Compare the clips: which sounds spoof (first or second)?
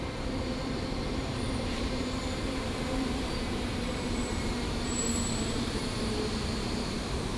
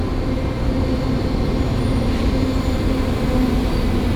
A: first